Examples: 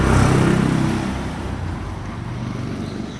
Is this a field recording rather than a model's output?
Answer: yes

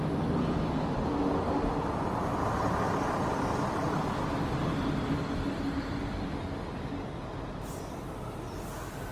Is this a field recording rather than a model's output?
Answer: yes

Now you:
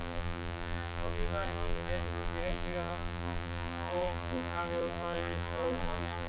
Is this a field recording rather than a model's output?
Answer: no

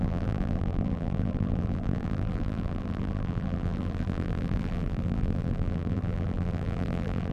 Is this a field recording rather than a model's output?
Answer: no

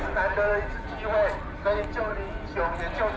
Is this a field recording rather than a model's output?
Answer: yes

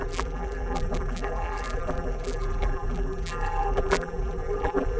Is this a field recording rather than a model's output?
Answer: no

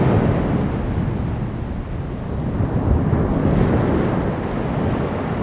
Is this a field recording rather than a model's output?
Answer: yes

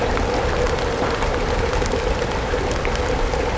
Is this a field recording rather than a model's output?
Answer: yes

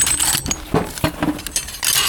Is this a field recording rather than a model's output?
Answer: yes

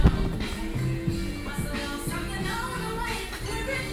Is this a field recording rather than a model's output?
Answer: yes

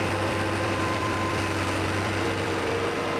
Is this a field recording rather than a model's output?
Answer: no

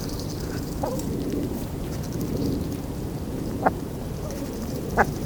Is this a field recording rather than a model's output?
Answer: no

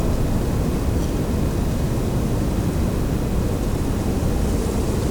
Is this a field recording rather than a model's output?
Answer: yes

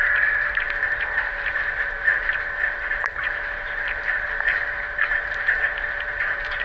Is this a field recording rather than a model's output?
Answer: no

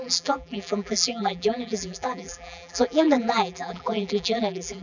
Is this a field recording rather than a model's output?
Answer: no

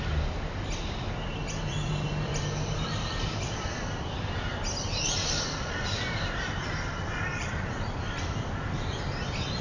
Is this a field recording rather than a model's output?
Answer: no